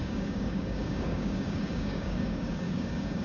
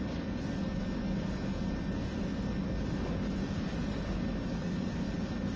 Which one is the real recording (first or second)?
second